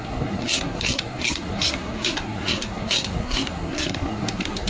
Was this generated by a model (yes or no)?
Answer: yes